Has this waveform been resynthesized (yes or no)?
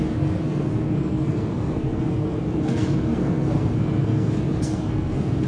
yes